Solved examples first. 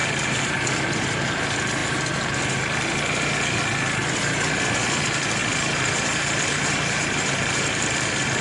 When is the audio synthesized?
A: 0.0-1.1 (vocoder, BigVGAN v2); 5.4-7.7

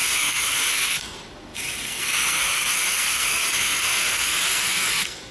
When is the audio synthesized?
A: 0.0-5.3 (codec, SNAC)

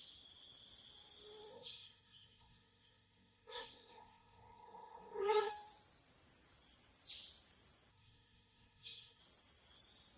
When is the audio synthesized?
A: 1.5-5.5 (codec, SNAC); 7.9-9.2

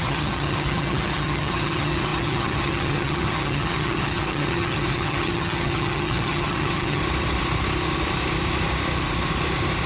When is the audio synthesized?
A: 0.0-7.0 (vocoder, HiFi-GAN)

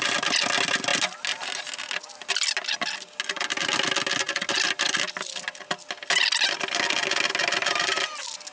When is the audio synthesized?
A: none

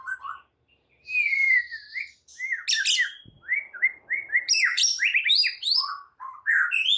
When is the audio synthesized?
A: 4.7-6.6 (vocoder, BigVGAN v2)

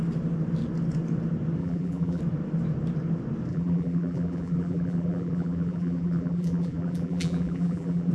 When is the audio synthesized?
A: 1.6-2.2 (vocoder, BigVGAN v2); 3.5-8.1

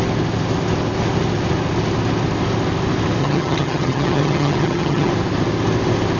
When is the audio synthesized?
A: 3.2-5.1 (vocoder, HiFi-GAN)